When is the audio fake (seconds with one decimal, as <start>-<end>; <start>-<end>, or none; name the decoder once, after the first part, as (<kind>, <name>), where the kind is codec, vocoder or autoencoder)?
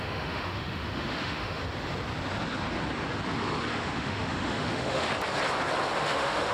0.0-1.6 (autoencoder, DAC-VAE); 3.7-5.1; 6.0-6.5